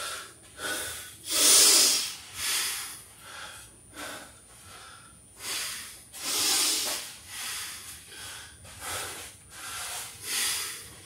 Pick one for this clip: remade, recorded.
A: recorded